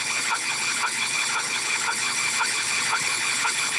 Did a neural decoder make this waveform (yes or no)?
yes